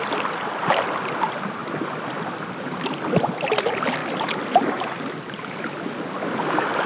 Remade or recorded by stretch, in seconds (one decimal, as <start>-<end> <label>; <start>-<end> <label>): 0.0-6.9 recorded